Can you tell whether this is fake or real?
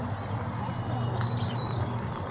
real